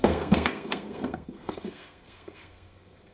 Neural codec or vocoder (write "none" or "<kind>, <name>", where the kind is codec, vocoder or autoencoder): codec, SNAC